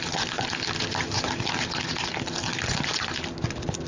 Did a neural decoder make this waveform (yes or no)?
no